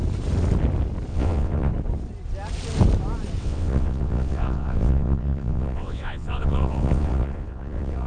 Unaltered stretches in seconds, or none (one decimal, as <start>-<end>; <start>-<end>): 0.0-1.1; 1.7-3.4